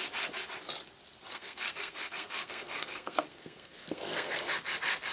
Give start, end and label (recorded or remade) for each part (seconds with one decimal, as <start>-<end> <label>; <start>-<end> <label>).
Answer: 0.0-1.3 recorded; 1.3-4.4 remade; 4.4-5.1 recorded